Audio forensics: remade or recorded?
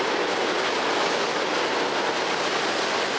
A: recorded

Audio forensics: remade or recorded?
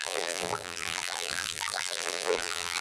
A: remade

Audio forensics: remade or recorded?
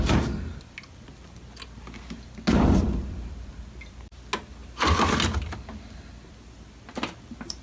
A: recorded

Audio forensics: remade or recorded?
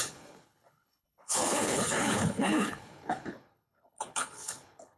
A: remade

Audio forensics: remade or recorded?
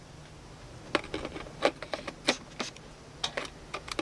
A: recorded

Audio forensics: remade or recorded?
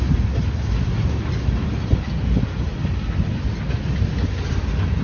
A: recorded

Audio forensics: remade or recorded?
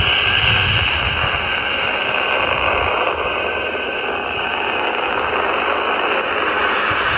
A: recorded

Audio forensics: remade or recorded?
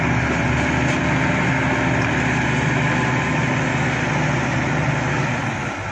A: recorded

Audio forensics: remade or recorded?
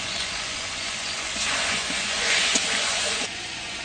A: remade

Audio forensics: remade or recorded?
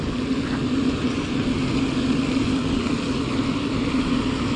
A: recorded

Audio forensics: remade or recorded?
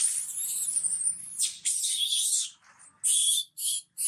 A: recorded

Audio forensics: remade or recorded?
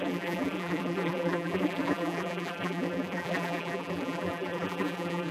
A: remade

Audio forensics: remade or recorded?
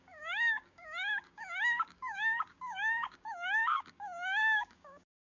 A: remade